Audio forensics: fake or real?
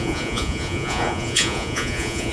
fake